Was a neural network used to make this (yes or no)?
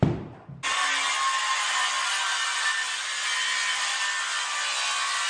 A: no